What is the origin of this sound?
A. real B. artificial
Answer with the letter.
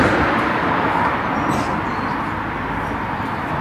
A